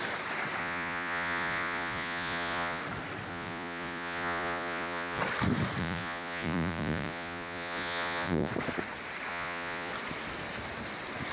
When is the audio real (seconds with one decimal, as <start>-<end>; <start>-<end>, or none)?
0.0-0.6; 2.8-3.3; 5.2-5.8; 8.5-9.3; 9.9-11.3